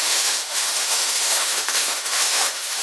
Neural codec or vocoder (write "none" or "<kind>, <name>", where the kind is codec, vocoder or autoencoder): autoencoder, DAC-VAE